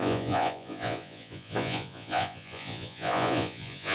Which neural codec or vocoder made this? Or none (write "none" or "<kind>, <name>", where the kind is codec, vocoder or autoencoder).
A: vocoder, Vocos